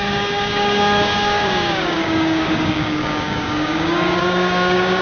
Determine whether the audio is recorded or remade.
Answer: remade